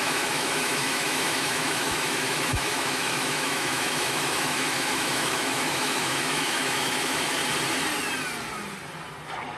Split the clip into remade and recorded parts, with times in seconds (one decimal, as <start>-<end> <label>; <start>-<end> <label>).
0.0-7.4 remade; 7.4-9.6 recorded